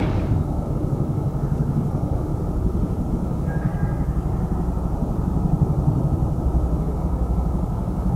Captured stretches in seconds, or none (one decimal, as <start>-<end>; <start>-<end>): 2.3-3.1; 3.7-6.8